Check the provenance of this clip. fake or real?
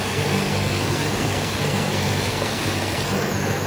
fake